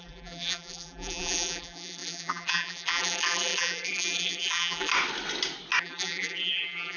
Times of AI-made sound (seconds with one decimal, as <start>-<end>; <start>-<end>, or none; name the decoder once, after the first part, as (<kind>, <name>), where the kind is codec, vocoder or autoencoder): 0.0-4.9 (vocoder, BigVGAN v2); 5.8-7.0